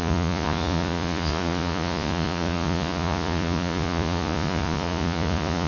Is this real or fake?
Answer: fake